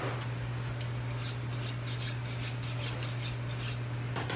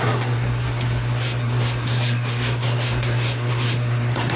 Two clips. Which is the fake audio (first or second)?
second